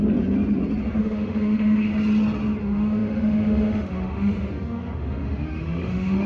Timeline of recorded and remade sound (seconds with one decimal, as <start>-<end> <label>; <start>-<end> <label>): 0.0-1.0 recorded; 1.0-1.9 remade; 1.9-2.6 recorded; 2.6-6.3 remade